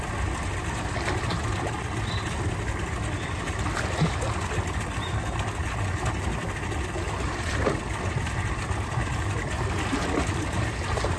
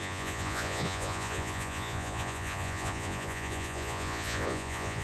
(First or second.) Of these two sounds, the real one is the first